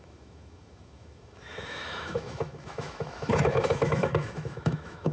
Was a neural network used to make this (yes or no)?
yes